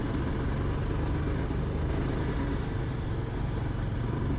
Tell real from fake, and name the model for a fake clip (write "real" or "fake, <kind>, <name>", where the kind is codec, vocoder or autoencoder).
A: real